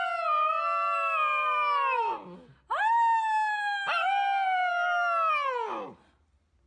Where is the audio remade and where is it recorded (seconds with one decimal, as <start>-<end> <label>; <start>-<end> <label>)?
0.0-6.7 recorded